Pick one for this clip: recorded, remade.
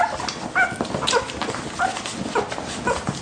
recorded